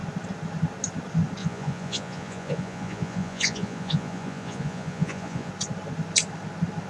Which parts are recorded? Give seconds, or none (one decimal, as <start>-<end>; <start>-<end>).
0.0-1.4; 5.5-6.9